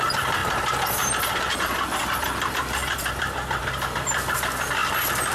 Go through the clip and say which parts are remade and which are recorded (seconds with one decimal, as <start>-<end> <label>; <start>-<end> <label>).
0.0-0.4 remade; 0.4-1.3 recorded; 1.3-4.8 remade; 4.8-5.3 recorded